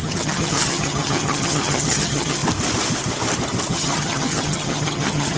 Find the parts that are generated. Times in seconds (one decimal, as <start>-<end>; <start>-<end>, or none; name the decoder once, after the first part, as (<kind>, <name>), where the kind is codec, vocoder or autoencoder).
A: 0.0-2.4 (vocoder, HiFi-GAN); 3.7-5.4